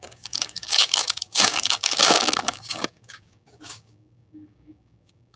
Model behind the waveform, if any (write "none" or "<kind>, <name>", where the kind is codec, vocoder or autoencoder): codec, DAC